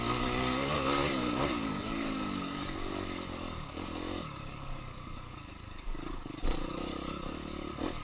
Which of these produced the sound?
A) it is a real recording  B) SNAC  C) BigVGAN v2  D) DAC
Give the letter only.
D